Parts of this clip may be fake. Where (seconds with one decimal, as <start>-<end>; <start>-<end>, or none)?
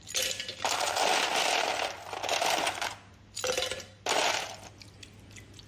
none